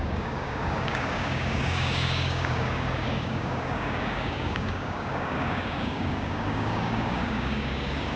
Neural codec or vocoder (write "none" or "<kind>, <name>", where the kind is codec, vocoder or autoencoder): codec, DAC